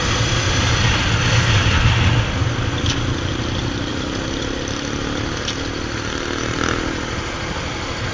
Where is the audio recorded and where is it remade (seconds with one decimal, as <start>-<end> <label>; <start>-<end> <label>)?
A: 0.0-8.1 recorded